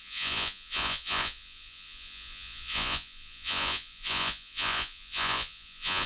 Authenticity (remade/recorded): remade